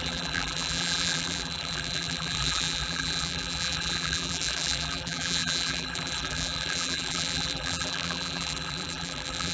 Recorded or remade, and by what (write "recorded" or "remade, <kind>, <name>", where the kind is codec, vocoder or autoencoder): remade, vocoder, BigVGAN v2